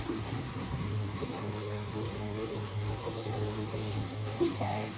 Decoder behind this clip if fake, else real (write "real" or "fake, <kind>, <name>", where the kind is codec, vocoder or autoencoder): fake, codec, SNAC